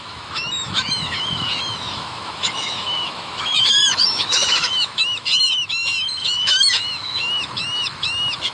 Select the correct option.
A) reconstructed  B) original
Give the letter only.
A